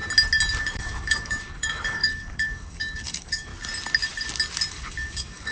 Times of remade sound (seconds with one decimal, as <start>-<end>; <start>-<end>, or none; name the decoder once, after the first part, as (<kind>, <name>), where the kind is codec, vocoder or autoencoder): 0.6-3.5 (codec, DAC); 4.7-5.5